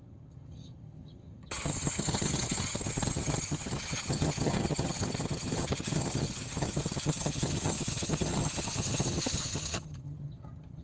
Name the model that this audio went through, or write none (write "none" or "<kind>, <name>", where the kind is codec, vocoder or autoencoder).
vocoder, HiFi-GAN